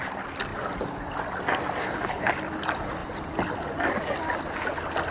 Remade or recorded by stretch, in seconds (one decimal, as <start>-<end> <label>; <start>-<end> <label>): 0.0-1.8 recorded; 1.8-2.3 remade; 2.3-5.1 recorded